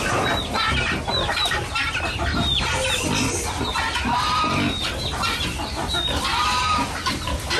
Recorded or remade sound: recorded